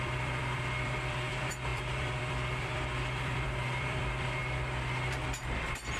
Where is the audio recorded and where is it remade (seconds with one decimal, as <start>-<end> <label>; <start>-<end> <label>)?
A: 0.0-4.4 remade; 4.4-6.0 recorded